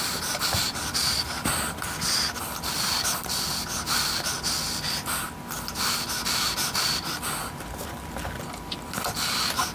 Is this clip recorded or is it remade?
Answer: recorded